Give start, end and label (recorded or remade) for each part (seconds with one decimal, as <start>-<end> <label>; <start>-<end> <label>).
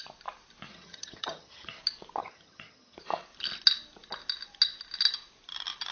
0.0-0.7 recorded; 0.7-1.8 remade; 1.8-2.2 recorded; 2.2-3.0 remade; 3.0-5.9 recorded